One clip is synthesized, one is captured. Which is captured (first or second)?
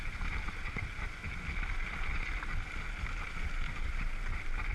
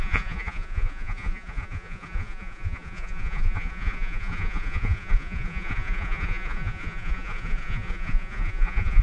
first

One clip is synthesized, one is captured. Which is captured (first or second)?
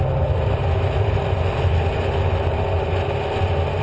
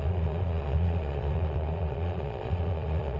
first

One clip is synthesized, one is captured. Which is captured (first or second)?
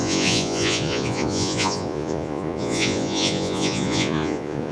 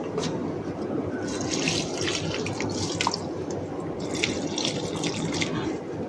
second